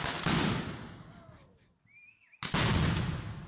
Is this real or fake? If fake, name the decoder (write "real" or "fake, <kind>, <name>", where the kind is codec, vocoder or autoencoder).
real